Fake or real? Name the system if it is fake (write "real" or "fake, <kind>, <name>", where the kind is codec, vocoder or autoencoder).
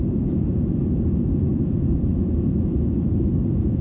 fake, vocoder, Vocos